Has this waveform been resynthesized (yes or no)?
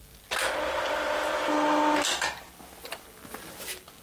no